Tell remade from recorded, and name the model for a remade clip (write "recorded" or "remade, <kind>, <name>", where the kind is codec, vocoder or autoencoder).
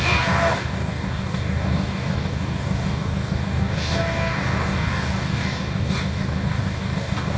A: remade, codec, DAC